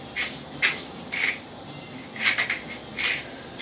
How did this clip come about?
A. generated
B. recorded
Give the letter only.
B